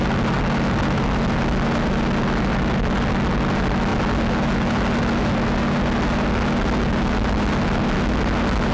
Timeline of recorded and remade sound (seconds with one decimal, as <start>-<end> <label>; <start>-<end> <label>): 0.0-8.7 recorded